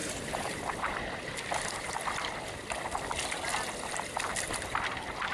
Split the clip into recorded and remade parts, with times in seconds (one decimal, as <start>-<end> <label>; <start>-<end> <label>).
0.0-0.6 remade; 0.6-5.3 recorded